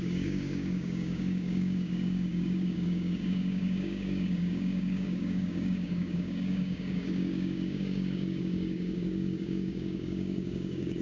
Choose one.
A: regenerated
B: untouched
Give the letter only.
A